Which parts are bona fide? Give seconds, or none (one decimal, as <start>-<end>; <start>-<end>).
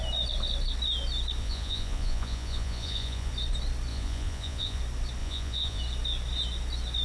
0.0-1.4; 3.3-3.9; 4.8-5.2; 5.8-7.0